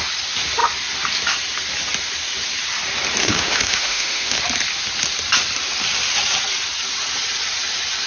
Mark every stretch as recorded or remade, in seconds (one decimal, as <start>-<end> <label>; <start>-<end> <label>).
0.0-3.2 recorded; 3.2-4.4 remade; 4.4-8.1 recorded